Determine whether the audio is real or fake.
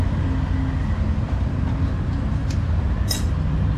real